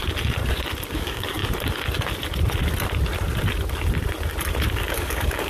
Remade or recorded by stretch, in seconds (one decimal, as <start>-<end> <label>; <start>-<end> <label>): 0.0-0.9 recorded; 0.9-1.4 remade; 1.4-4.7 recorded; 4.7-5.5 remade